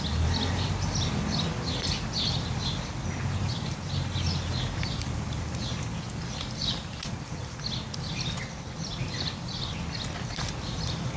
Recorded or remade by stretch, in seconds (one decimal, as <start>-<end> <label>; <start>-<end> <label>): 0.0-11.2 recorded